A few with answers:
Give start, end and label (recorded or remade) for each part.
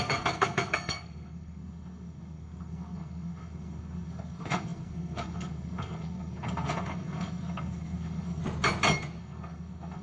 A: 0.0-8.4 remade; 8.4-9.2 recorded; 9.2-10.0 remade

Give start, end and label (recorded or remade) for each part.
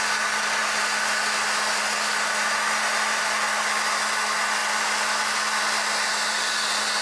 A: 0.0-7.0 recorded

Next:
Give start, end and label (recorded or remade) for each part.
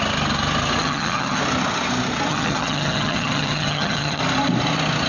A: 0.0-0.8 recorded; 0.8-1.4 remade; 1.4-2.3 recorded; 2.3-4.2 remade; 4.2-5.1 recorded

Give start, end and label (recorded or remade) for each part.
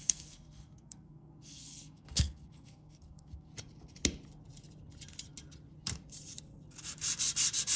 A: 0.0-3.5 remade; 3.5-7.8 recorded